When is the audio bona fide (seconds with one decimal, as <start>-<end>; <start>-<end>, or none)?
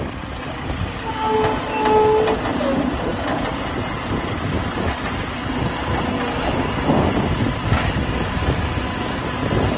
0.0-9.8